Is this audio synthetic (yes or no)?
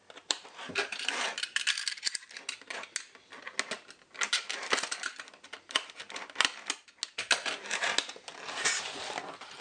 no